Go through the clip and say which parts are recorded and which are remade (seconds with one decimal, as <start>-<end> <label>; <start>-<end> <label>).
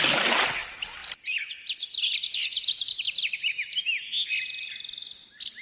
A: 0.0-5.6 recorded